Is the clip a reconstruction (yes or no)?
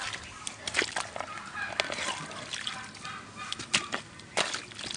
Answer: no